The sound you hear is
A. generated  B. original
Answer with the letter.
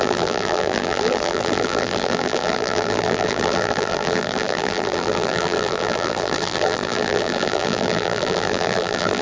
A